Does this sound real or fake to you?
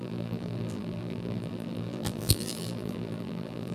fake